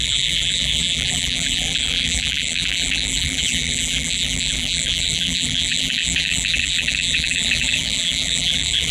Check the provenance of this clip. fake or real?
fake